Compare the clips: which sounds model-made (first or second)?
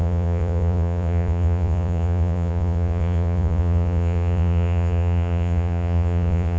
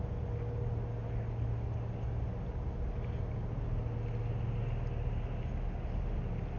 first